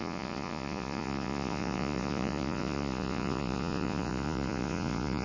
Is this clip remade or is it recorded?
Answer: remade